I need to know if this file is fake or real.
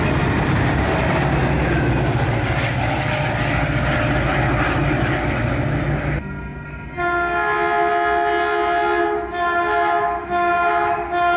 real